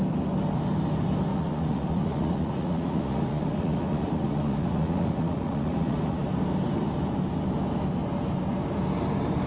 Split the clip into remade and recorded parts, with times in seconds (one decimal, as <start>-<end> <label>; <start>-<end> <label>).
0.0-1.3 recorded; 1.3-6.3 remade; 6.3-9.5 recorded